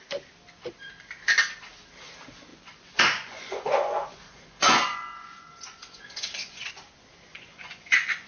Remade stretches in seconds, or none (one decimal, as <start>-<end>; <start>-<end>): 2.5-6.7; 7.3-8.3

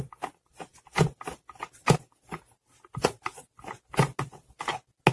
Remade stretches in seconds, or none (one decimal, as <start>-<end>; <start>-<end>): none